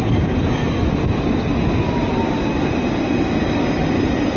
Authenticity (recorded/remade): recorded